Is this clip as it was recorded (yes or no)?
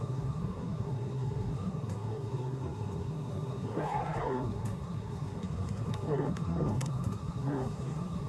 no